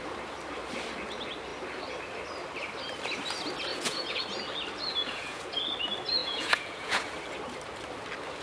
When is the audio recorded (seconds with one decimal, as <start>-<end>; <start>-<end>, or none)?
0.0-3.7; 4.2-5.0; 5.5-6.2; 7.0-8.4